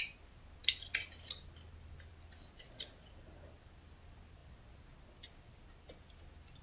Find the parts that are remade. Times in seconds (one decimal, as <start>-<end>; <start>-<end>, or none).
none